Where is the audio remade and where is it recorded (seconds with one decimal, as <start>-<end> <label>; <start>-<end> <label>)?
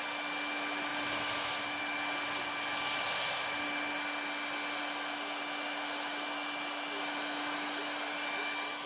0.0-8.9 recorded